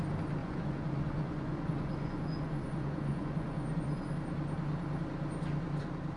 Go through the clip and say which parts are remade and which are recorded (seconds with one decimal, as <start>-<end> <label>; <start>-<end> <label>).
0.0-0.4 recorded; 0.4-4.1 remade; 4.1-6.2 recorded